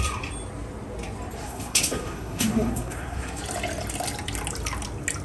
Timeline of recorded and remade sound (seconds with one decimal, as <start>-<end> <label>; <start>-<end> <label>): 0.0-1.4 recorded; 1.4-3.4 remade; 3.4-5.2 recorded